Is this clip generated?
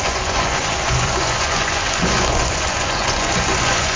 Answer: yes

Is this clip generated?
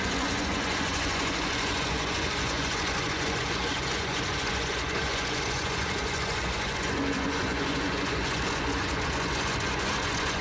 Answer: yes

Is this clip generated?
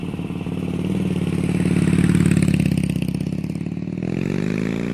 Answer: no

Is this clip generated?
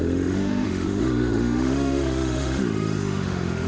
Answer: yes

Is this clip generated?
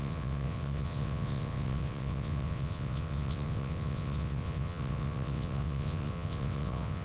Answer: yes